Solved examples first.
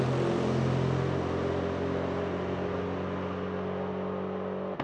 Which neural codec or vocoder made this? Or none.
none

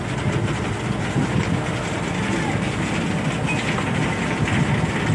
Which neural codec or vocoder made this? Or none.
none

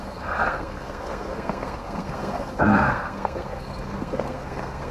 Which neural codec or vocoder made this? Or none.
codec, SNAC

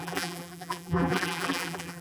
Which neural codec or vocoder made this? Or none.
vocoder, BigVGAN v2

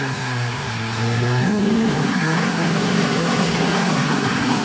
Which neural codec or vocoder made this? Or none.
codec, SNAC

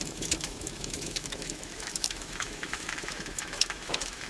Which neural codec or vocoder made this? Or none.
autoencoder, DAC-VAE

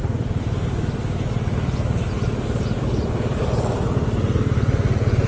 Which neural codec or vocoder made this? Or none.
none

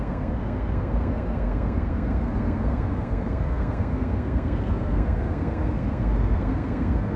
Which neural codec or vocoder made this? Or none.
codec, SNAC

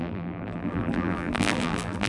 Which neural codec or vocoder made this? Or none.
vocoder, BigVGAN v2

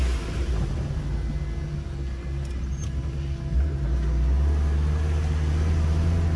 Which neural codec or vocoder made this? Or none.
none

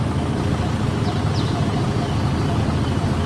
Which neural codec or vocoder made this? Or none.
none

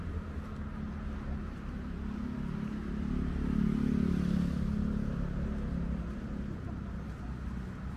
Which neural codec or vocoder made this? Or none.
none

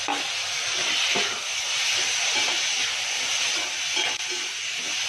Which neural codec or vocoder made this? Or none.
none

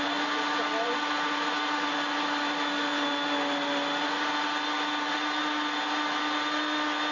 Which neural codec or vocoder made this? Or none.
none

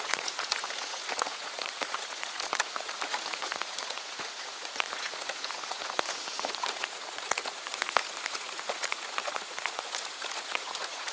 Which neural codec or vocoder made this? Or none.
vocoder, Vocos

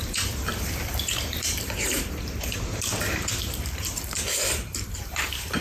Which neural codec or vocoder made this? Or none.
vocoder, BigVGAN v2